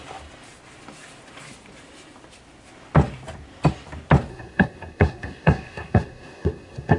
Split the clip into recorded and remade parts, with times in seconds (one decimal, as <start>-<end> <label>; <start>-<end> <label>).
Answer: 0.0-4.3 recorded; 4.3-7.0 remade

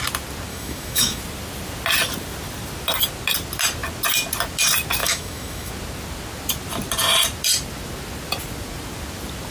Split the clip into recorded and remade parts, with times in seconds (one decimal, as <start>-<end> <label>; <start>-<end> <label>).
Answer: 0.0-0.5 recorded; 0.5-1.2 remade; 1.2-5.0 recorded; 5.0-5.7 remade; 5.7-9.5 recorded

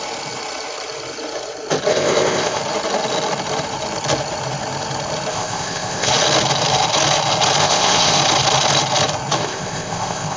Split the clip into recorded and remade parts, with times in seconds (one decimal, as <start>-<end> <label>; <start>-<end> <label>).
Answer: 0.0-1.9 recorded; 1.9-2.6 remade; 2.6-5.3 recorded; 5.3-6.1 remade; 6.1-7.6 recorded; 7.6-8.2 remade; 8.2-9.4 recorded; 9.4-10.4 remade

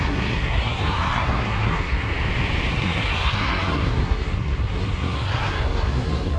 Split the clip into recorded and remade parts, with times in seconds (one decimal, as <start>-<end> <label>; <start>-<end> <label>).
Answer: 0.0-2.1 remade; 2.1-2.7 recorded; 2.7-6.4 remade

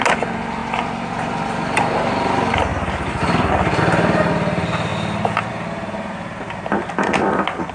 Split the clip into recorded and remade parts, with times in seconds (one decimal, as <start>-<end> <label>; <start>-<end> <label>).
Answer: 0.0-7.7 recorded